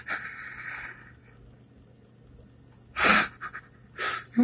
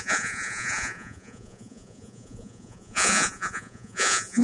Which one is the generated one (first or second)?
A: second